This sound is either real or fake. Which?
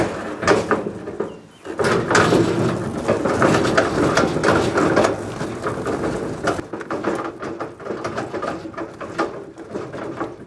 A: real